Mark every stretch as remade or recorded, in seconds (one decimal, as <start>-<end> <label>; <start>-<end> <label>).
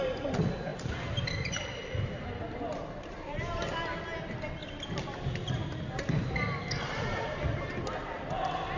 0.0-8.8 recorded